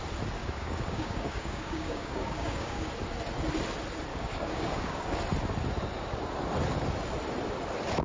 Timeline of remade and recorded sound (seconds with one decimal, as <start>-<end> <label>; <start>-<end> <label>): 0.0-0.4 recorded; 0.4-2.9 remade; 2.9-4.1 recorded; 4.1-5.2 remade; 5.2-8.0 recorded